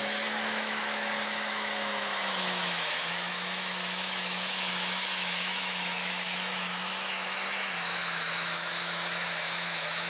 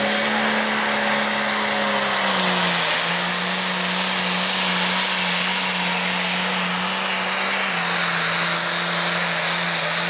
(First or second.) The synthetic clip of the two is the first